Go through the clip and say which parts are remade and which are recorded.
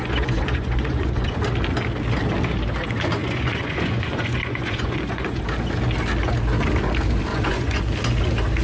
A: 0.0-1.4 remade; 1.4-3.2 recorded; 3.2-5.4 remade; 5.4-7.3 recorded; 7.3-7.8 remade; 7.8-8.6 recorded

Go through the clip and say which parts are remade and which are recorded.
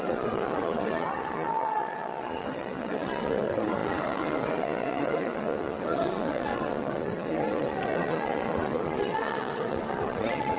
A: 0.0-10.6 remade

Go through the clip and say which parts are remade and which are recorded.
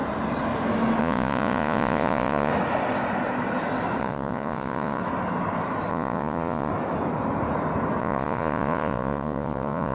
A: 0.0-1.0 recorded; 1.0-2.5 remade; 2.5-4.0 recorded; 4.0-5.0 remade; 5.0-5.9 recorded; 5.9-6.7 remade; 6.7-8.0 recorded; 8.0-9.9 remade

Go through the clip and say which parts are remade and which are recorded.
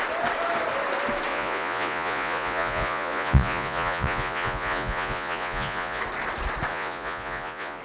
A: 0.0-1.3 recorded; 1.3-6.0 remade; 6.0-6.7 recorded; 6.7-7.8 remade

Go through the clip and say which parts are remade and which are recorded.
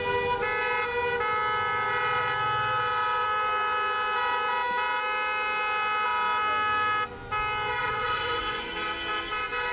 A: 0.0-7.8 recorded; 7.8-8.7 remade; 8.7-9.7 recorded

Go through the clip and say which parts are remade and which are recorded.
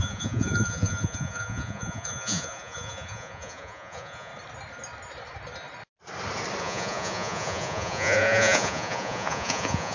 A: 0.0-4.3 remade; 4.3-6.6 recorded; 6.6-9.9 remade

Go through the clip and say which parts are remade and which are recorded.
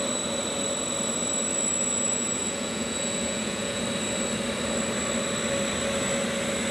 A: 0.0-1.5 recorded; 1.5-3.8 remade; 3.8-6.7 recorded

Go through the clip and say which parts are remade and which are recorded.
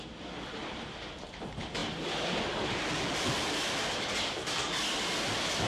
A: 0.0-5.7 recorded